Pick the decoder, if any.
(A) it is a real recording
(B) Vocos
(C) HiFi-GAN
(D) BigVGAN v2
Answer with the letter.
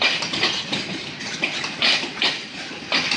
A